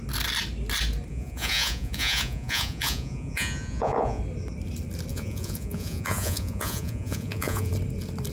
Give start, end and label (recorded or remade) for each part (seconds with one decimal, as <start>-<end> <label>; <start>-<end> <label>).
0.0-1.1 recorded; 1.1-4.2 remade; 4.2-5.1 recorded; 5.1-7.7 remade; 7.7-8.3 recorded